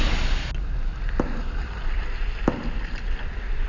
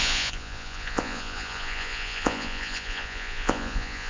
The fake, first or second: second